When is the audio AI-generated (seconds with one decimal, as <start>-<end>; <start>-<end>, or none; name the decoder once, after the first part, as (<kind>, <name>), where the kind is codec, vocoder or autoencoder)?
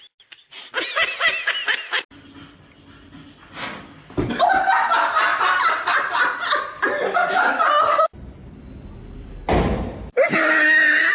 none